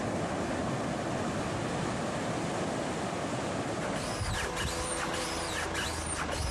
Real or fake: real